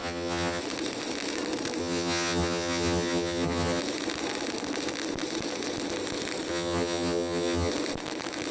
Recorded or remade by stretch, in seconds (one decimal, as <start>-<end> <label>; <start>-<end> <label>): 0.0-0.6 remade; 0.6-1.8 recorded; 1.8-3.8 remade; 3.8-6.5 recorded; 6.5-7.7 remade; 7.7-8.5 recorded